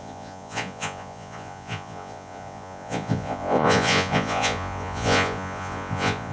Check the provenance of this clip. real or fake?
fake